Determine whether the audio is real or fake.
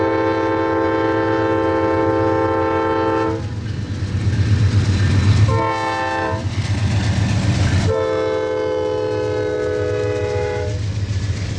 real